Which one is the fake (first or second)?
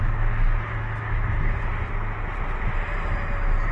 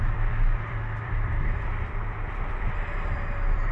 second